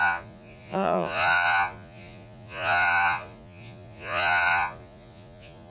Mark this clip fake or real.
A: fake